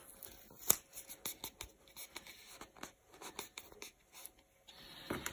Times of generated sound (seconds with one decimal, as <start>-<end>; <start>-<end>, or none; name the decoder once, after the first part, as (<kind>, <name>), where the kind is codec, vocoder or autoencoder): none